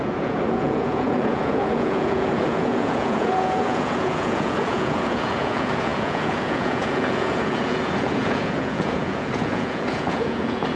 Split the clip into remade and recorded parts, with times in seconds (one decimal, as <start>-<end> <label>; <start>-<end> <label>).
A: 0.0-10.8 remade